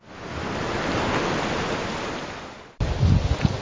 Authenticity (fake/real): real